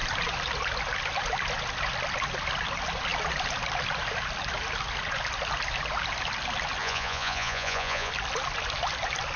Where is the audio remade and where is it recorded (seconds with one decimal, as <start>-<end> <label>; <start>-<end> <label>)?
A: 0.0-6.8 recorded; 6.8-8.1 remade; 8.1-9.4 recorded